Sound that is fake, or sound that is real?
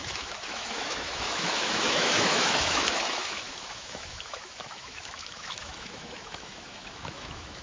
fake